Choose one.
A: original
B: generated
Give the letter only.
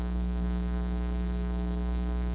B